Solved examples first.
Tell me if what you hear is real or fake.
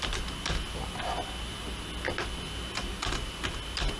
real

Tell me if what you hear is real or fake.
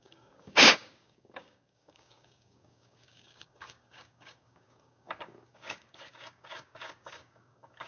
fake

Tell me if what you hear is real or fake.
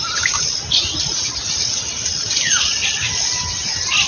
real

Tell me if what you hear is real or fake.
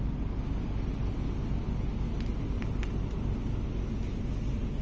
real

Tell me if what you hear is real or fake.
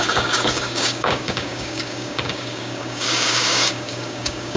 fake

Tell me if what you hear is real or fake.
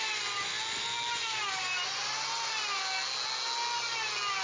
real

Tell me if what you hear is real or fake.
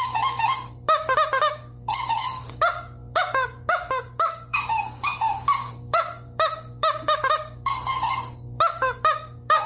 fake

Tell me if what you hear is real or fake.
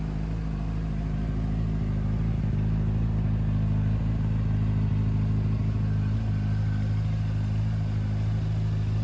real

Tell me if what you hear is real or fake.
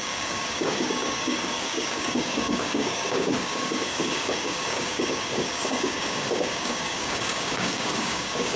fake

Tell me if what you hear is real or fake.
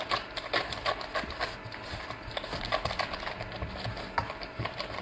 real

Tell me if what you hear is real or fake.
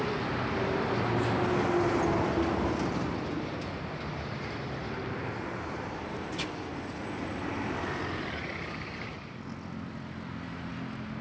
real